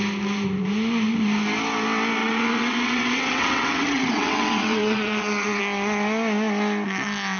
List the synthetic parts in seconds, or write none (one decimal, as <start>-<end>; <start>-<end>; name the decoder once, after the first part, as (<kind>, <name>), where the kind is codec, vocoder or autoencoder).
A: 2.2-5.6 (vocoder, WaveNeXt)